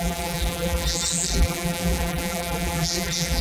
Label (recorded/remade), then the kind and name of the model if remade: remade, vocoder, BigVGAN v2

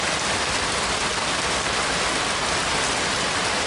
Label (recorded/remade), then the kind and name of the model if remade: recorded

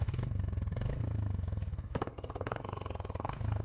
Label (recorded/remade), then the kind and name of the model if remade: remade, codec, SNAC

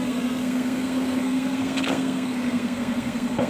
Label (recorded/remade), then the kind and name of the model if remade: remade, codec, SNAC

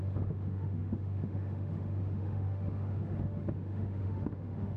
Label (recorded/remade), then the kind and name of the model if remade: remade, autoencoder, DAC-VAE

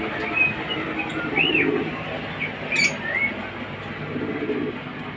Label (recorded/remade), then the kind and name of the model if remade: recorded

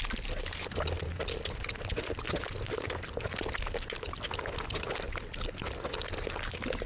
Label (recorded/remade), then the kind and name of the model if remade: recorded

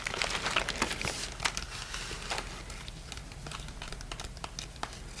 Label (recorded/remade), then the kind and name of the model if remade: recorded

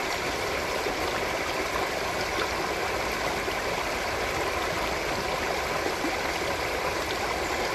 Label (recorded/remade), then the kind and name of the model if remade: recorded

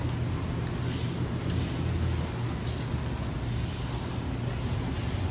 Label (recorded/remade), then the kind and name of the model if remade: recorded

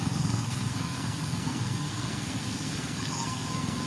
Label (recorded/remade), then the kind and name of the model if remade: remade, codec, SNAC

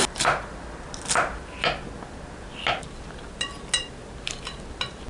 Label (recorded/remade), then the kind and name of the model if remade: recorded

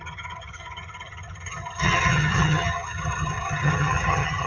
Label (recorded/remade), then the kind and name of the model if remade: remade, vocoder, HiFi-GAN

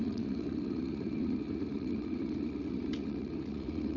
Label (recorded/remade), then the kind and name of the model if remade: remade, vocoder, Vocos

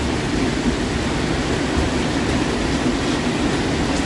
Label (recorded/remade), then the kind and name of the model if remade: recorded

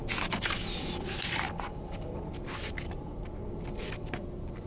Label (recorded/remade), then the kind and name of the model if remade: recorded